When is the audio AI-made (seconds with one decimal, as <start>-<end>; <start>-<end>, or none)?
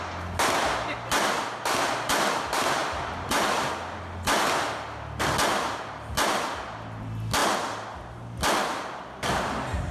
2.8-3.7